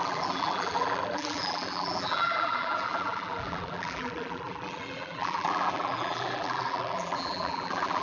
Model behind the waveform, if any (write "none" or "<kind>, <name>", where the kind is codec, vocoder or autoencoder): vocoder, BigVGAN v2